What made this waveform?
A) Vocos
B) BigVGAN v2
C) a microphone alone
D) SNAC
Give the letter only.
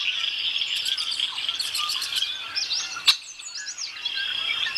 C